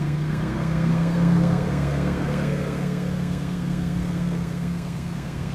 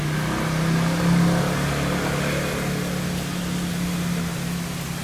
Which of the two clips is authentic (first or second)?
second